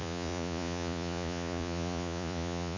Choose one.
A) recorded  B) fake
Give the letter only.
B